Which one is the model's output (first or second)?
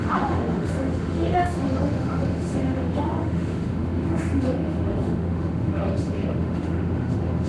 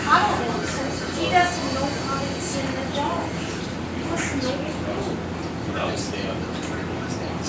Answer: first